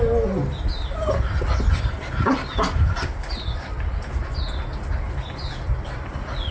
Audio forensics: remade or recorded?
recorded